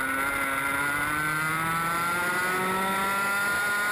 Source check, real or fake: real